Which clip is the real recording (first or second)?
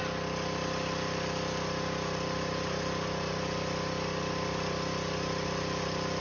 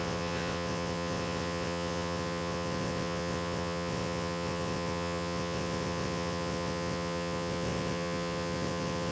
first